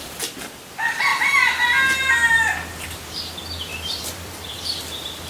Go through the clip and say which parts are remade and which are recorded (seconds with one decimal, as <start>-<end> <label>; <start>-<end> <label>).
0.0-1.1 recorded; 1.1-1.6 remade; 1.6-3.7 recorded; 3.7-4.5 remade; 4.5-5.3 recorded